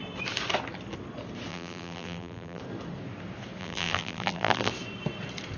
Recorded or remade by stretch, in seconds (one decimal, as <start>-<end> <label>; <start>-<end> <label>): 0.0-1.5 recorded; 1.5-2.6 remade; 2.6-3.6 recorded; 3.6-4.7 remade; 4.7-5.6 recorded